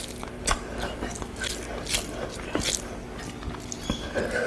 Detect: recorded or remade recorded